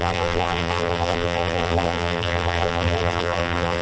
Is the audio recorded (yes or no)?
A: no